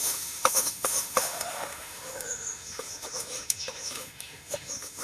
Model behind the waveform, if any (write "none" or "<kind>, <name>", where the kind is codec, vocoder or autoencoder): autoencoder, DAC-VAE